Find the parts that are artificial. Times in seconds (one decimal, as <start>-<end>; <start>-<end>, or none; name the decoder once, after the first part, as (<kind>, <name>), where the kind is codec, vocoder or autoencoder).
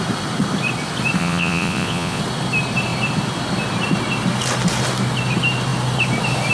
1.2-2.2 (vocoder, Vocos)